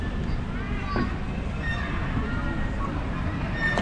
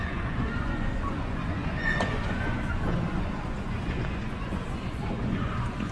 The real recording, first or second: first